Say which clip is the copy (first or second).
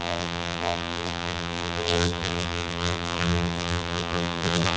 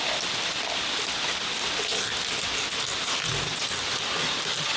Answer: first